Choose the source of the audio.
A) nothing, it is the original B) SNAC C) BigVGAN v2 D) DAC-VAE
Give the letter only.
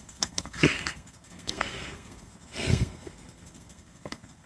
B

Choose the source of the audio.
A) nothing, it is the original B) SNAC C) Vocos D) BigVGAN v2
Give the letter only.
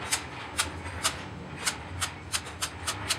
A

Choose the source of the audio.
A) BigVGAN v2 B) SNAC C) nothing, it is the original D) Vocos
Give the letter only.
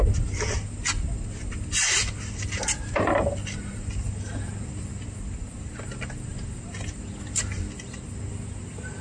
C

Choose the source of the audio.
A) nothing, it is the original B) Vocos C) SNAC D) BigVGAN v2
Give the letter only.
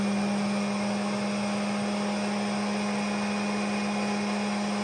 A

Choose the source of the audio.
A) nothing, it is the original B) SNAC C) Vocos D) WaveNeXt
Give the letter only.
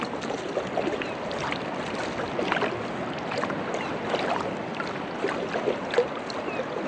A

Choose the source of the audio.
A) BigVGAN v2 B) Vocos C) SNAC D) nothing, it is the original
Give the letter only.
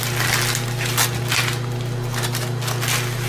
D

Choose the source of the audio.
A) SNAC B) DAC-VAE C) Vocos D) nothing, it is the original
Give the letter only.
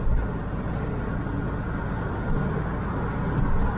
D